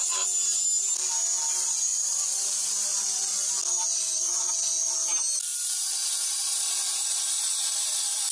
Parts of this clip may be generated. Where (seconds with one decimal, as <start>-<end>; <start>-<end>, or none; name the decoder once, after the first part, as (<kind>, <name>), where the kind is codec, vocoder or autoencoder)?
1.9-3.5 (vocoder, Vocos); 3.9-4.5